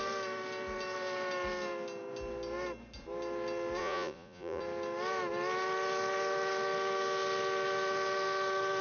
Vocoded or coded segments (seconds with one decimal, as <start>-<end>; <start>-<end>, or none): 3.8-4.6